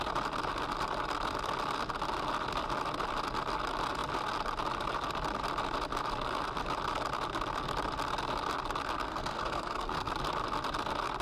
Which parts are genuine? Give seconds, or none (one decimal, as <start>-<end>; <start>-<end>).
0.0-9.1; 10.1-11.2

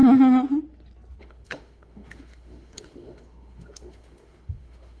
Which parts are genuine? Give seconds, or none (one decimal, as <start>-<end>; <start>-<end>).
0.0-1.2

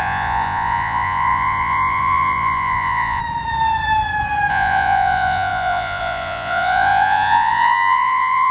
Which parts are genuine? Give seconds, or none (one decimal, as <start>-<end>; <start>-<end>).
3.2-4.5

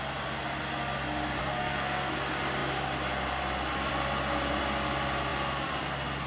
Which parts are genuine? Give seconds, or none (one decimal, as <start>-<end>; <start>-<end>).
0.0-1.4; 2.1-6.3

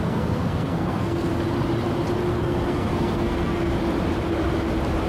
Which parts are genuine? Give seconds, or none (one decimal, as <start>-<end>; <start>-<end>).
1.3-2.3; 3.7-5.1

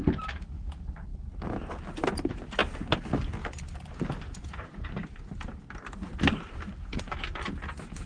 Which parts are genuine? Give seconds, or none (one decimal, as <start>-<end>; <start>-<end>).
0.0-8.1

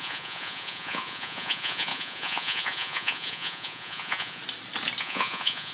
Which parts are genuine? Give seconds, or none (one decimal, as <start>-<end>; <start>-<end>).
4.4-5.0

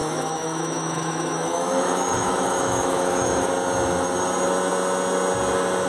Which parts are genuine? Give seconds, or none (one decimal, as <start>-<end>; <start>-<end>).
3.5-5.9